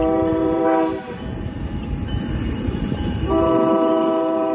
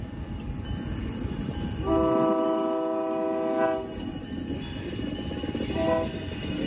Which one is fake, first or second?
first